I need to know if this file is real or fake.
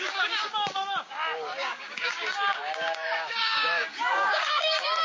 fake